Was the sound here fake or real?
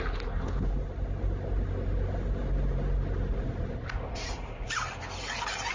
real